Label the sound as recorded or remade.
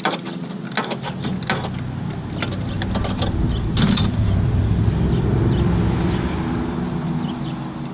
recorded